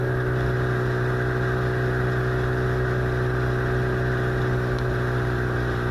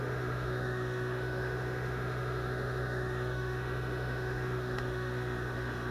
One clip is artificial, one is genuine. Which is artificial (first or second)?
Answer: second